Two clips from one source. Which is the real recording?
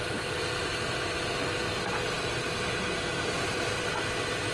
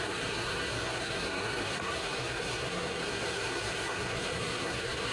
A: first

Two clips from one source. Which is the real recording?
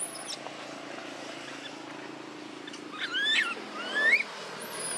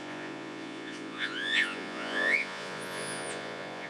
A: first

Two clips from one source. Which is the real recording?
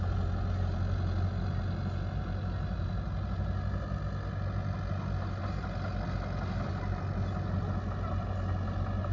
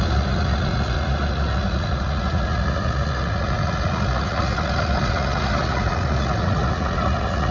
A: first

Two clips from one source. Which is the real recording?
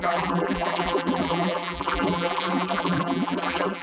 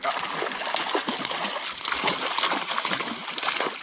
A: second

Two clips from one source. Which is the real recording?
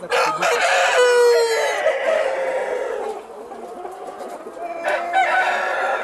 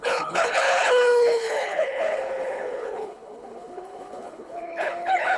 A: first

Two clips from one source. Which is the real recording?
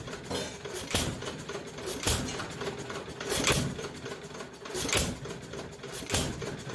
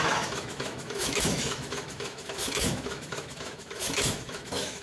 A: first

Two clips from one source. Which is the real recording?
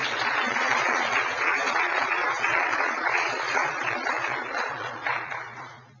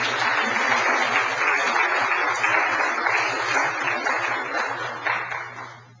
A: second